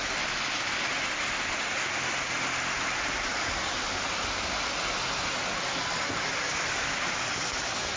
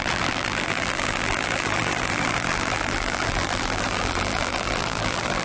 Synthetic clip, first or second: second